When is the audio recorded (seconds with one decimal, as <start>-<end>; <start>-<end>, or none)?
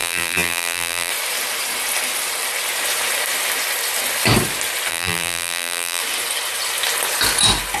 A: 1.1-4.9; 6.0-7.8